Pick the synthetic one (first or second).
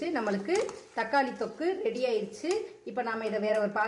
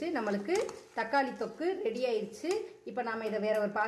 first